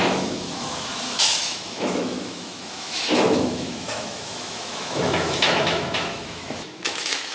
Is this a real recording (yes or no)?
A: no